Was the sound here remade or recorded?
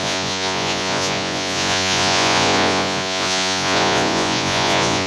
remade